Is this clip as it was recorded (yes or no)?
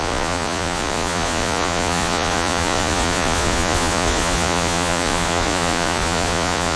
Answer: no